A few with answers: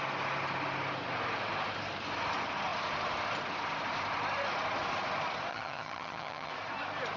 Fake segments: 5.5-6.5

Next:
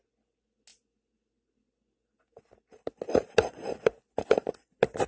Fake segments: none

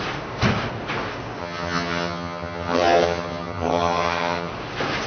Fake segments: 1.4-4.5

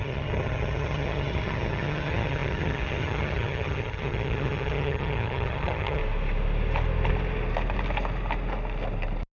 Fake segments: 0.0-6.0

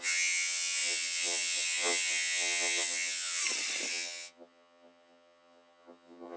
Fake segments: 0.0-3.4; 3.9-6.4

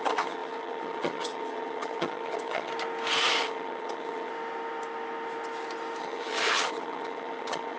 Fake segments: 0.0-2.7; 3.4-4.3; 6.0-7.8